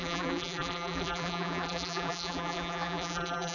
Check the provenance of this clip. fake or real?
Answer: fake